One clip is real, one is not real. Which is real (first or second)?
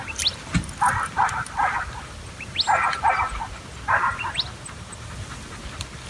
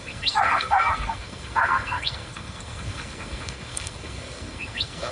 first